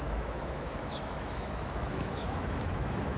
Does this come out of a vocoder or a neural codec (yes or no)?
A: yes